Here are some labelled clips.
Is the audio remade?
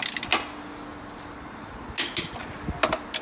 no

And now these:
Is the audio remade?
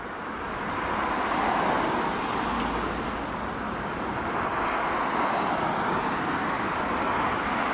no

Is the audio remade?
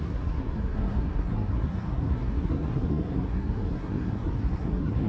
yes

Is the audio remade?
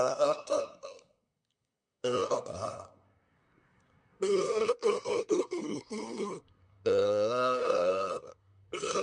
yes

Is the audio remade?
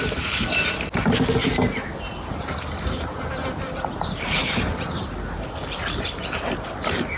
no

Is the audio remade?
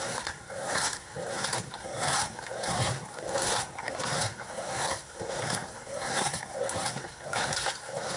yes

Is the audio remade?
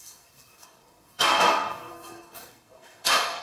yes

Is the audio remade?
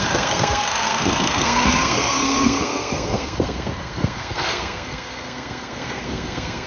yes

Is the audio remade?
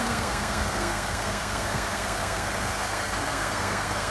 yes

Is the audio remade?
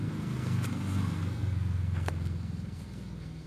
yes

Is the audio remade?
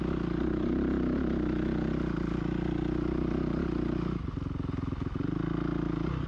no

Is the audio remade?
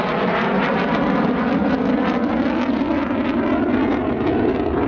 no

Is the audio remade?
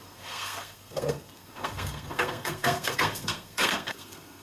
yes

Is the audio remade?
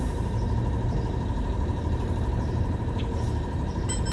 no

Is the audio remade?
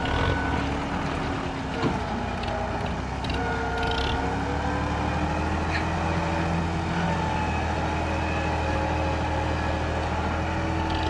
no